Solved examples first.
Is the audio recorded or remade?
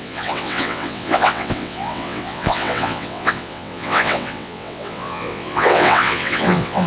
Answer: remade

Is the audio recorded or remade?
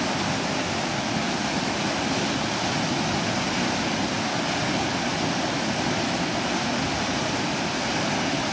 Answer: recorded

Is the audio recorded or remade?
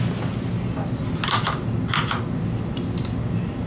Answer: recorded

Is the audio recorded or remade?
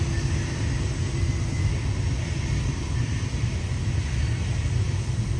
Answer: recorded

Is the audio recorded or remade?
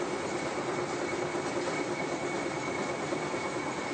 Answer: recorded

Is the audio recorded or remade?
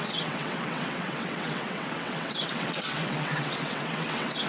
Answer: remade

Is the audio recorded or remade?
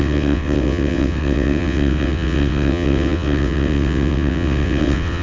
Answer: remade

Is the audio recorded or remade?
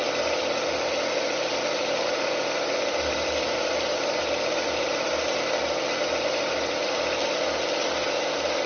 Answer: recorded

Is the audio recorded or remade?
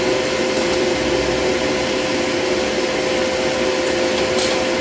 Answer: recorded